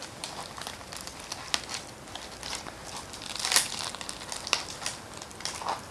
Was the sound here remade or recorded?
recorded